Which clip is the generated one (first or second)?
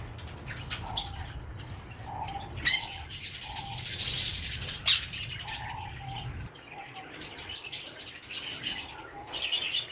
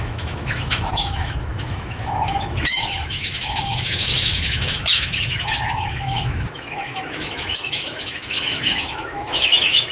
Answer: second